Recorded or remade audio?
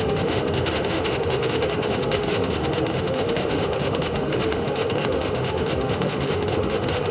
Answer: remade